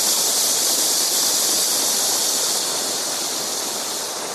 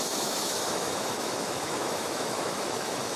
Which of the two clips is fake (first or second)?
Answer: second